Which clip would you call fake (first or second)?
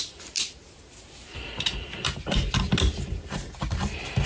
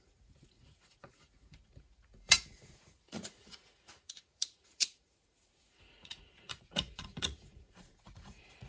second